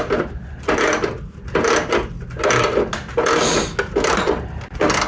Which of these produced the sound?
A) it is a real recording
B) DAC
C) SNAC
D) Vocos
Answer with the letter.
A